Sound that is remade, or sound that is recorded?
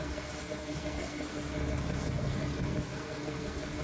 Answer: remade